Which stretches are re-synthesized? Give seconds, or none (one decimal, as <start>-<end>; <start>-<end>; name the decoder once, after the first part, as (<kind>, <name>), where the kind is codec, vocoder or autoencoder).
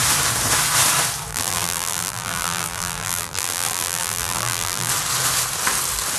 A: 1.3-4.9 (vocoder, BigVGAN v2)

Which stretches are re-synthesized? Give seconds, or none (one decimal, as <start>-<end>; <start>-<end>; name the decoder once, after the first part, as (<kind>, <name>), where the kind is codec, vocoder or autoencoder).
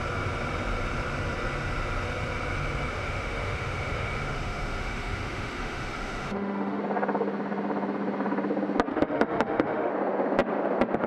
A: 2.9-6.8 (autoencoder, DAC-VAE); 8.9-9.9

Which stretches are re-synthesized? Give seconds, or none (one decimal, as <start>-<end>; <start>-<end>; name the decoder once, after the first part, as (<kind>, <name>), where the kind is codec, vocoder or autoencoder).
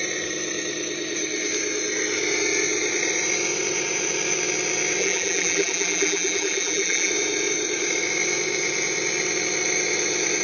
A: 5.0-7.1 (vocoder, BigVGAN v2)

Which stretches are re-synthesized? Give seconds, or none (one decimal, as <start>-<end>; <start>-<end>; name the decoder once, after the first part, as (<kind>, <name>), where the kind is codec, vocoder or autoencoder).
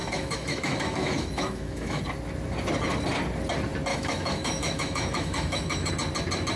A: 0.0-2.0 (autoencoder, DAC-VAE); 3.9-5.9